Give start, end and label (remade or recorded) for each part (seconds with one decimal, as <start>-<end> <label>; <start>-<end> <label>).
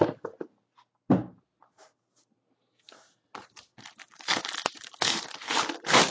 0.0-6.1 recorded